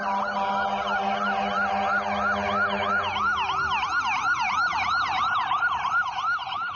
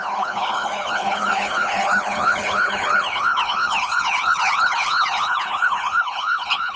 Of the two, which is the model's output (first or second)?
second